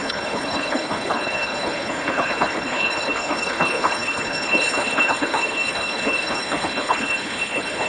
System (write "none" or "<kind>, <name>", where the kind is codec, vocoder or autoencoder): codec, HILCodec